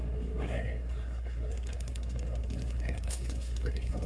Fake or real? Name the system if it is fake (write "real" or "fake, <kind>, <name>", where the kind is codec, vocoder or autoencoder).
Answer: fake, codec, SNAC